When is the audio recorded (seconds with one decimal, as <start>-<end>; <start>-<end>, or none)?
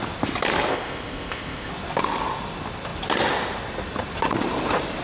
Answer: 0.0-0.7; 1.7-5.0